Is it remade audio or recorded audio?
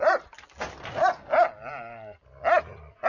recorded